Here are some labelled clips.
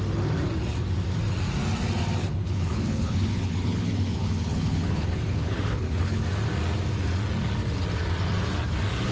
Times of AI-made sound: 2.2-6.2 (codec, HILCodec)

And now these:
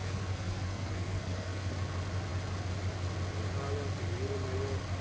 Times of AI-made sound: 0.0-1.7 (codec, SNAC)

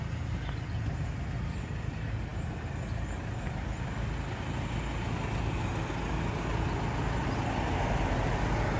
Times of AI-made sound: none